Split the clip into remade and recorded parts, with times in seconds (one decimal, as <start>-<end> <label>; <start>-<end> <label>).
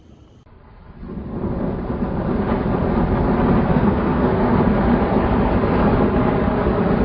0.0-3.7 recorded; 3.7-4.6 remade; 4.6-7.0 recorded